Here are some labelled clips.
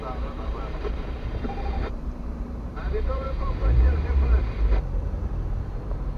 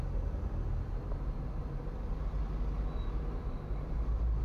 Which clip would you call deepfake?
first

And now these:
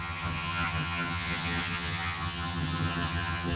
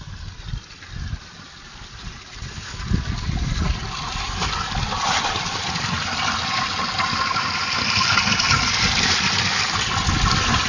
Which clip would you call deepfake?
first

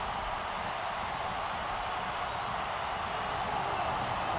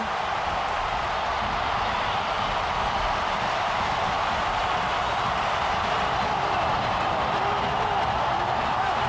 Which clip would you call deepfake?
second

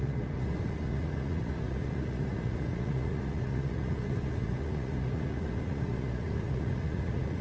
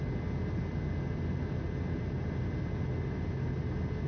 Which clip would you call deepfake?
first